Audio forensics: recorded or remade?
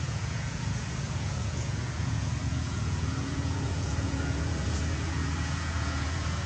remade